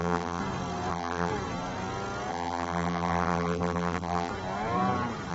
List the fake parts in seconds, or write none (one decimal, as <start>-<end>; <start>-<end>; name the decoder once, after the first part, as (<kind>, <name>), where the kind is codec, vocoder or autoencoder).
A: 0.0-0.4 (vocoder, BigVGAN v2); 0.9-1.3; 2.3-4.3